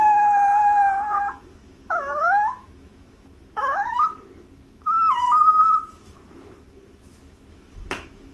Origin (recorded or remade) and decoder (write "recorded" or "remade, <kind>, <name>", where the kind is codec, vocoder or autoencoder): remade, autoencoder, DAC-VAE